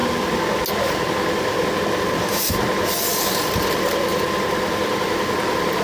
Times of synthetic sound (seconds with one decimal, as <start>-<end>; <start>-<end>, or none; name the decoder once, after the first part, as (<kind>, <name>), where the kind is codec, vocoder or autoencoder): 1.9-5.8 (vocoder, BigVGAN v2)